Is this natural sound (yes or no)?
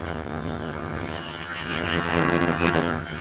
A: no